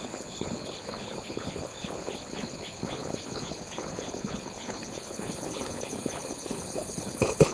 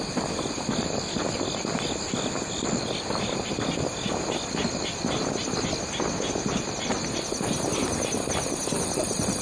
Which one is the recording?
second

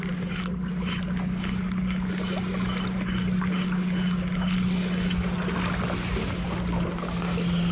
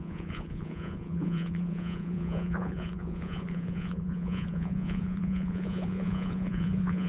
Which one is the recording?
first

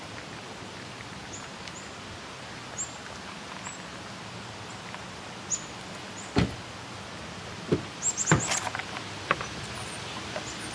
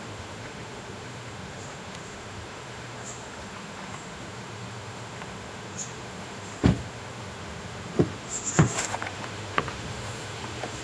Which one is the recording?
first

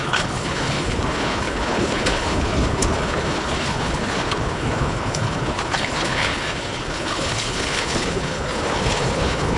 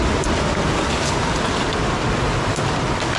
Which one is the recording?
second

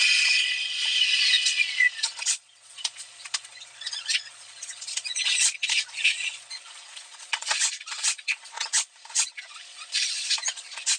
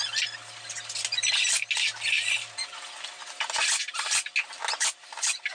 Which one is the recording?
second